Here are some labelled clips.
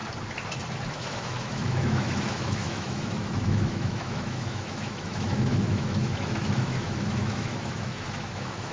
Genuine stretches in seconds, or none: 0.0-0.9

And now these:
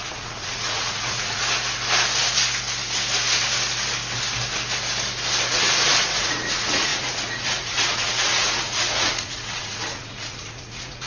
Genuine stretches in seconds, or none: 1.4-5.5

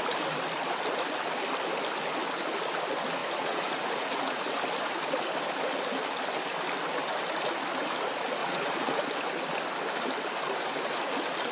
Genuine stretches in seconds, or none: 0.0-3.2; 4.4-8.4; 9.0-11.5

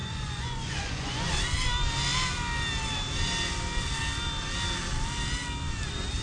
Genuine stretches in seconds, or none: 1.3-6.2